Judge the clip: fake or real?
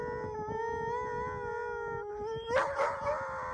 real